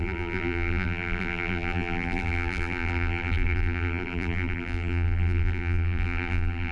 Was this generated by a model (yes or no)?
yes